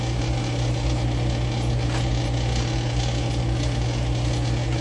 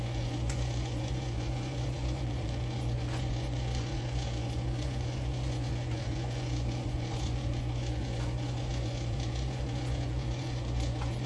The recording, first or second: first